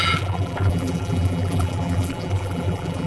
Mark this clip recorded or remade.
remade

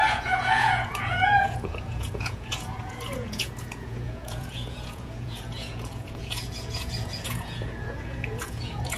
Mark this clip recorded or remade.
remade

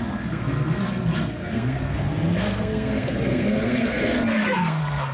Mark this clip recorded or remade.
remade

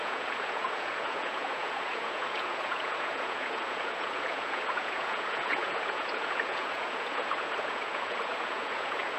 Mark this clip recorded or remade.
remade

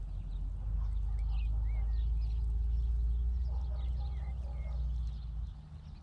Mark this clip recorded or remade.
recorded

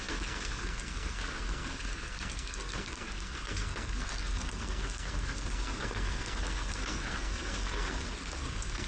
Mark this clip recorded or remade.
remade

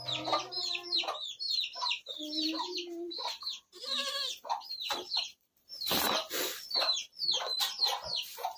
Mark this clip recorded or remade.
remade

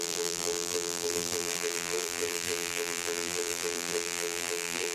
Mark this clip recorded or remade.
remade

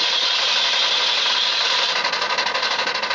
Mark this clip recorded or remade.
recorded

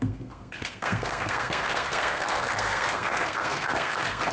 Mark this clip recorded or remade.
remade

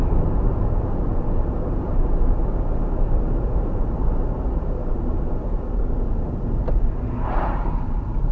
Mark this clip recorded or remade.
remade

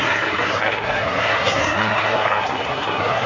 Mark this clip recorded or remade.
remade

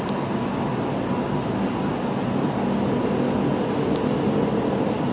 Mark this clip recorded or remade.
recorded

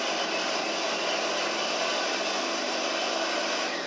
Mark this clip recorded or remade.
recorded